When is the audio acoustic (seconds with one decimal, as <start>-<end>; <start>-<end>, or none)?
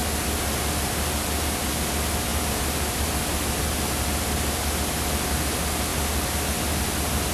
0.0-7.3